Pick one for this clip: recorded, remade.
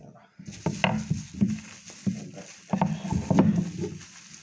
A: recorded